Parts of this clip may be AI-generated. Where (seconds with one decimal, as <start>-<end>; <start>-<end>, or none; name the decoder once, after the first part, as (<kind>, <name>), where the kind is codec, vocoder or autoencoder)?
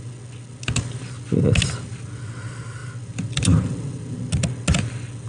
none